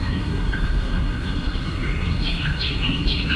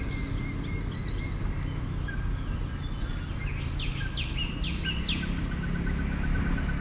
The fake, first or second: first